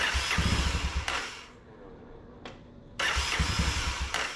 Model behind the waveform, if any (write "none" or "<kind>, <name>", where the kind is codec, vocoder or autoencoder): none